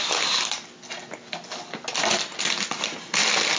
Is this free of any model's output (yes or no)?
yes